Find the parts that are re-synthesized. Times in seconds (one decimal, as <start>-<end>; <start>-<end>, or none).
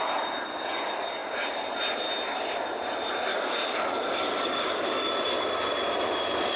3.3-5.1